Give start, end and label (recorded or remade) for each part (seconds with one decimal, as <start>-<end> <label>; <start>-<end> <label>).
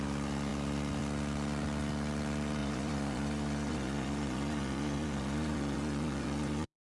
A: 0.0-2.6 recorded; 2.6-6.9 remade